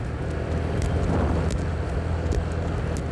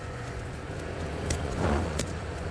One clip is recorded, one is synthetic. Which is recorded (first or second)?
first